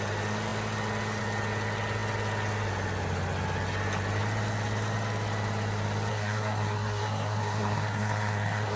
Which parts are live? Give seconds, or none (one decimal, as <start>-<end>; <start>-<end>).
0.0-6.1